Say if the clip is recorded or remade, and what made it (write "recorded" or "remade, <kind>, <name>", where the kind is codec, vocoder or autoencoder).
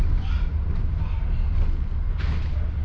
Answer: recorded